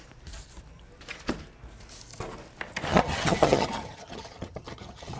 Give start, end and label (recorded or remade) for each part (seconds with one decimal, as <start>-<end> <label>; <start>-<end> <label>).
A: 0.0-2.9 recorded; 2.9-5.2 remade